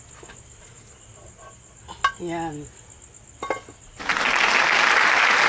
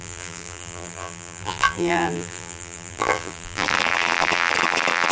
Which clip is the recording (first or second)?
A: first